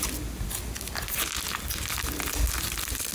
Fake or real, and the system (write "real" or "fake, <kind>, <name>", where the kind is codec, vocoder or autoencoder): real